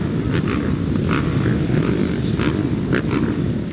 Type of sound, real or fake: real